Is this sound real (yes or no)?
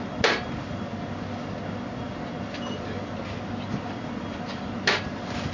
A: yes